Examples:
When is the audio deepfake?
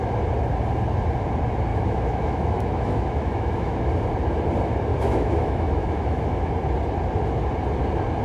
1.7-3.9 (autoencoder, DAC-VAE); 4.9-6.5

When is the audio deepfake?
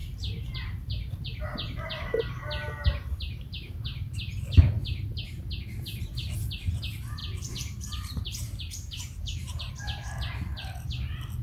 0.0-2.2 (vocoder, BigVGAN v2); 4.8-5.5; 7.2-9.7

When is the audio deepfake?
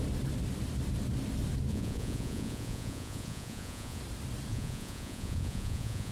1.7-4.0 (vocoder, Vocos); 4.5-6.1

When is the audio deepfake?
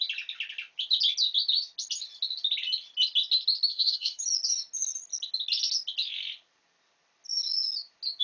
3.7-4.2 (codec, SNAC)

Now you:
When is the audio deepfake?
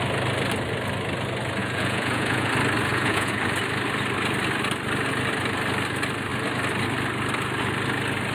1.6-2.5 (vocoder, Vocos); 2.9-3.4